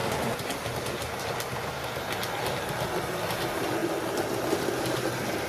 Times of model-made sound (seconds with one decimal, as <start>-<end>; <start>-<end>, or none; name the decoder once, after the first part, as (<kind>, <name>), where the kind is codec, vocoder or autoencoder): none